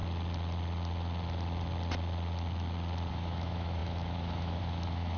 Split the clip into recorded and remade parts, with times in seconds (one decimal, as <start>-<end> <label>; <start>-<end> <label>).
0.0-3.1 recorded; 3.1-5.2 remade